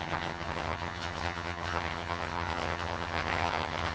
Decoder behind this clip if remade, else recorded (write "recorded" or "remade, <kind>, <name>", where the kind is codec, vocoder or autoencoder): remade, vocoder, HiFi-GAN